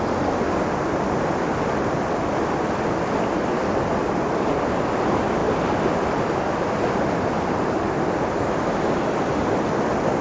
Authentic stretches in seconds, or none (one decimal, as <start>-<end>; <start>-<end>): 0.0-10.2